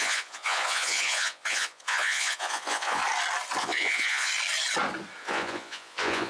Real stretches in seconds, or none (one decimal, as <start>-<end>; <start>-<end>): 3.0-3.6; 4.3-5.2